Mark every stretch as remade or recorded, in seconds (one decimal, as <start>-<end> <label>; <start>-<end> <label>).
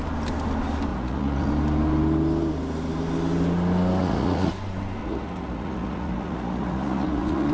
0.0-0.9 recorded; 0.9-1.5 remade; 1.5-4.0 recorded; 4.0-4.5 remade; 4.5-5.0 recorded; 5.0-7.5 remade